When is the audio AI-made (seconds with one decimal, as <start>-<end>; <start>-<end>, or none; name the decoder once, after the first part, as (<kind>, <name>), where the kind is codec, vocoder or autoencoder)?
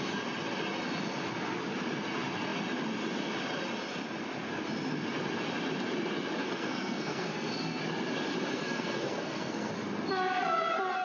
6.4-7.8 (codec, SNAC); 8.5-9.7